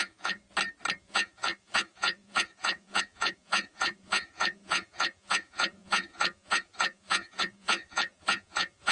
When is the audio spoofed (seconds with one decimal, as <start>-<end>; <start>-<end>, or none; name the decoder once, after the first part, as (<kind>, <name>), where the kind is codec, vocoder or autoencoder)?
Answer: 0.0-0.4 (vocoder, Vocos); 1.0-8.9